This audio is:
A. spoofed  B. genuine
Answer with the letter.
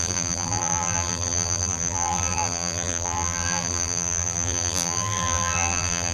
A